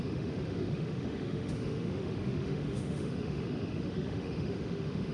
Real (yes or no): no